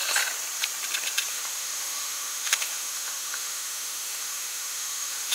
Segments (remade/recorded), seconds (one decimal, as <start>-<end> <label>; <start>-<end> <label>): 0.0-1.3 recorded; 1.3-5.3 remade